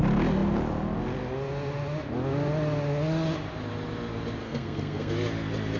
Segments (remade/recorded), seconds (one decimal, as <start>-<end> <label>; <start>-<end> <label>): 0.0-4.4 recorded; 4.4-5.1 remade; 5.1-5.8 recorded